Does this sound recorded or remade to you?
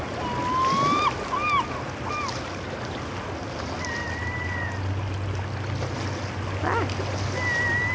recorded